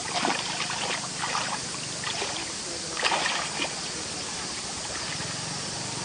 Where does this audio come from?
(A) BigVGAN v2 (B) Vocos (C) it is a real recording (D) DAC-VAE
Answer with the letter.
A